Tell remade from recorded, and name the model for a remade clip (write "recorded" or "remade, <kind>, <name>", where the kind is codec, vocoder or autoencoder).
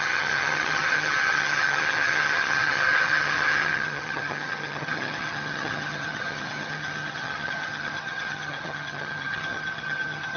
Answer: remade, vocoder, HiFi-GAN